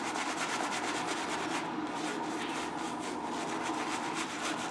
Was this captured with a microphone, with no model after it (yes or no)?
yes